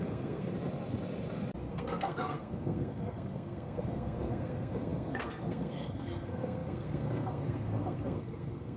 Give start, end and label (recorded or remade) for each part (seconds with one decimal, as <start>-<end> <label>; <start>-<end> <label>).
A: 0.0-0.5 remade; 0.5-1.7 recorded; 1.7-8.8 remade